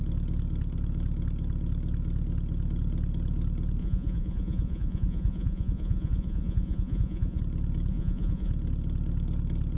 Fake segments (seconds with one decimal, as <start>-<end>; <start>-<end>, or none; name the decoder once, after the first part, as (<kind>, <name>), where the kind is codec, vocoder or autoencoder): 3.8-7.4 (vocoder, Vocos); 7.9-8.5